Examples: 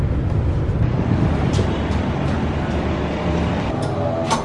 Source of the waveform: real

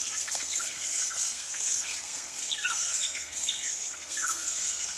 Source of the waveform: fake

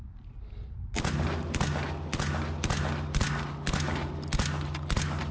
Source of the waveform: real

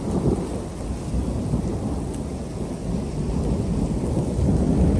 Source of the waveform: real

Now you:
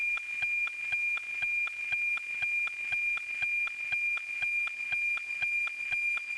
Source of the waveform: real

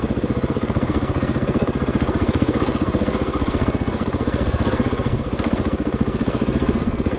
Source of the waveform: fake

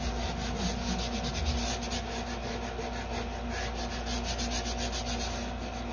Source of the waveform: real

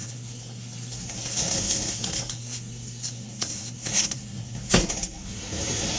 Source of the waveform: fake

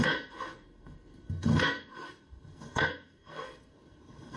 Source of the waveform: fake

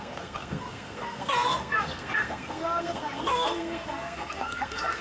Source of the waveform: fake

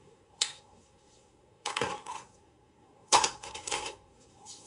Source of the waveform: fake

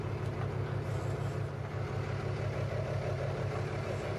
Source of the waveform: real